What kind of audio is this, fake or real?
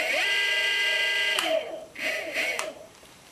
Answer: fake